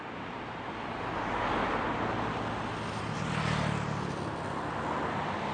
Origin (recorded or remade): recorded